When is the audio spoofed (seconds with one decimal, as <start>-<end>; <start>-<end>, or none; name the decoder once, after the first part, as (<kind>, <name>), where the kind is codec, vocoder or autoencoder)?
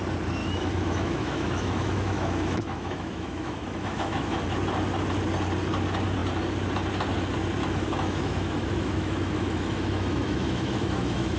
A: 0.4-4.4 (autoencoder, DAC-VAE); 7.6-11.4